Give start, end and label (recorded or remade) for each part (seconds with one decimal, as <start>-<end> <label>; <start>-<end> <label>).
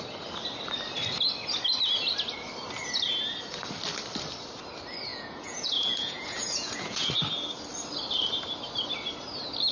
0.0-5.1 recorded; 5.1-7.1 remade; 7.1-9.7 recorded